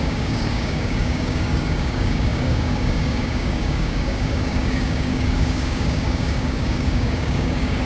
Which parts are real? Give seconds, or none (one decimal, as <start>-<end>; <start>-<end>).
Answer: none